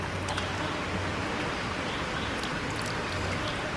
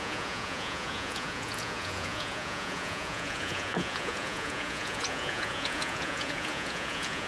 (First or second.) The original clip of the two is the first